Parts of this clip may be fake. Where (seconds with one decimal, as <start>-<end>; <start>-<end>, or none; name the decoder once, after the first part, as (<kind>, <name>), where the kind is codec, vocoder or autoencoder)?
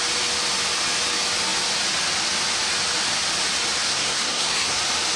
3.9-4.8 (codec, SNAC)